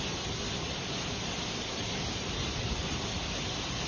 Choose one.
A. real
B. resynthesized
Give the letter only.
A